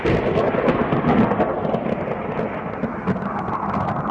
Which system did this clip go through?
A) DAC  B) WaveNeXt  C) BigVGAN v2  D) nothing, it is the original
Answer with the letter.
D